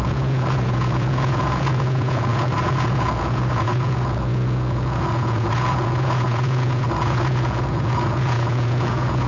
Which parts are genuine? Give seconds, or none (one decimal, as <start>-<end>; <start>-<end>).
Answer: none